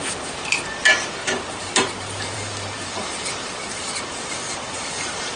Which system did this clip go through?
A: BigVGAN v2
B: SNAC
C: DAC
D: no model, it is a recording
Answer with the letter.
A